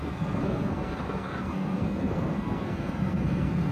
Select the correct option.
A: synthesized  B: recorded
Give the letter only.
A